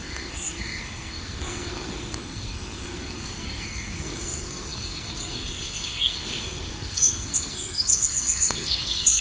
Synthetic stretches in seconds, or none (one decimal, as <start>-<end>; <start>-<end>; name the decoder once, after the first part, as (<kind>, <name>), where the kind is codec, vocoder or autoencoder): 0.0-9.2 (codec, SNAC)